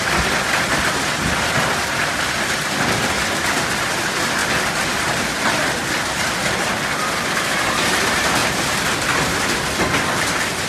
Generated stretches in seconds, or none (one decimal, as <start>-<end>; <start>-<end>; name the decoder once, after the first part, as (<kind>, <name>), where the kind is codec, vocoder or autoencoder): 8.4-9.8 (vocoder, BigVGAN v2)